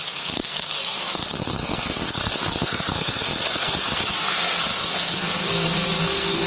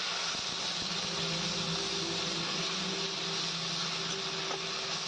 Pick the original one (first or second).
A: second